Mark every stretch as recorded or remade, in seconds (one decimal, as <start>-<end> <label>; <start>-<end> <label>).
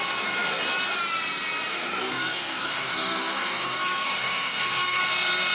0.0-1.7 recorded; 1.7-5.0 remade; 5.0-5.5 recorded